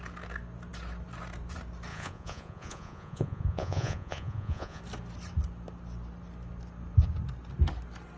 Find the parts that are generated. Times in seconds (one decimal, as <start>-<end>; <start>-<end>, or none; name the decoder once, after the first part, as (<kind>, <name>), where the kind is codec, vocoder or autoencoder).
1.9-4.8 (vocoder, Vocos)